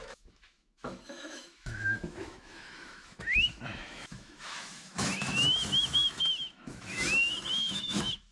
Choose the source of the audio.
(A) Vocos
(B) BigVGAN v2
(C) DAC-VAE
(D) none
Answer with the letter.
C